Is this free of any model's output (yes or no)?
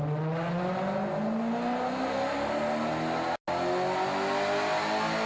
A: yes